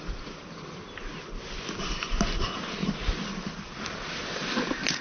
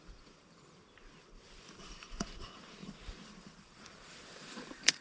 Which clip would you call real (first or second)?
first